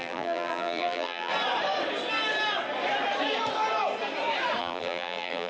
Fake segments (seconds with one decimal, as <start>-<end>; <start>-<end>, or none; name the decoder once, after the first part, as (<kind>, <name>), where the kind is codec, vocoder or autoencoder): 0.0-1.3 (vocoder, BigVGAN v2); 4.6-5.5